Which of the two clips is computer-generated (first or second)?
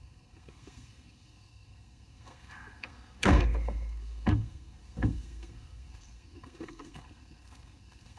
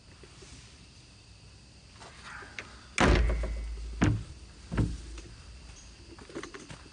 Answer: first